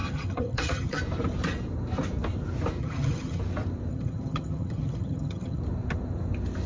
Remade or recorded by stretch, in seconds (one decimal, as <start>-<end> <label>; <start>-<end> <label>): 0.0-1.0 remade; 1.0-2.8 recorded; 2.8-3.4 remade; 3.4-3.9 recorded; 3.9-5.6 remade; 5.6-6.7 recorded